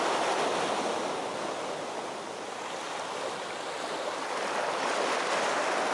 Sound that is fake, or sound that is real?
real